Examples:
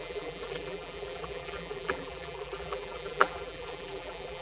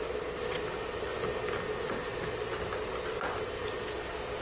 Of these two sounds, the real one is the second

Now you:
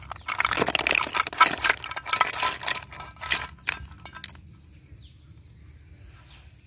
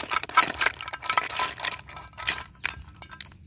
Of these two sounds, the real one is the first